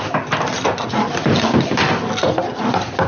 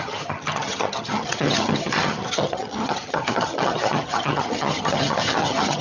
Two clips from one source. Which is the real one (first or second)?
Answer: first